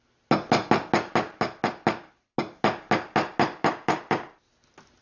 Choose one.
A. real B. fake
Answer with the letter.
A